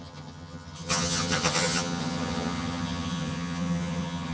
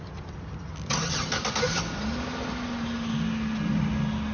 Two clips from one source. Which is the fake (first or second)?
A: first